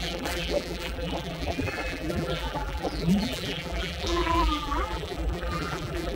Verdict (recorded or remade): remade